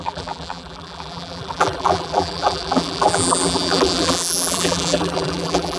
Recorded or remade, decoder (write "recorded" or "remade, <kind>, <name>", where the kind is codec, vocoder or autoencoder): remade, vocoder, BigVGAN v2